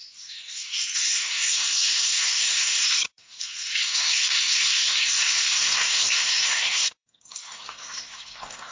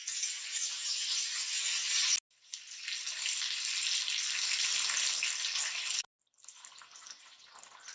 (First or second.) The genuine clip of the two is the second